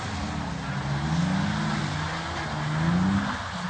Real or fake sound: real